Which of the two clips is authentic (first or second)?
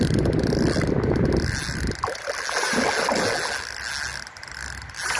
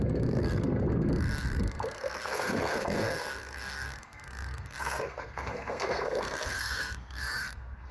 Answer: first